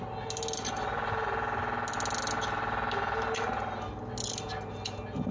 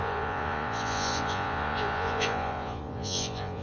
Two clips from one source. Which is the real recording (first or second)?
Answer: first